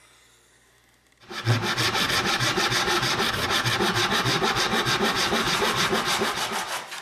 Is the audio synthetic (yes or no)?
no